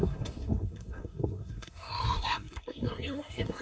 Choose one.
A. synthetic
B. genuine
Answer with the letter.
A